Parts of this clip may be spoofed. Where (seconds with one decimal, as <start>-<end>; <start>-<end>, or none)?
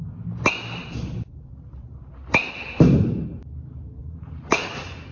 0.8-2.1; 4.0-4.5